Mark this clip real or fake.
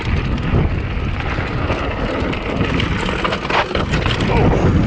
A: real